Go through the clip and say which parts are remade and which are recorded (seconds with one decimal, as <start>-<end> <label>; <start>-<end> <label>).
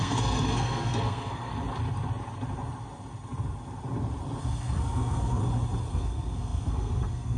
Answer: 0.0-1.5 remade; 1.5-4.4 recorded; 4.4-5.4 remade; 5.4-5.9 recorded; 5.9-7.4 remade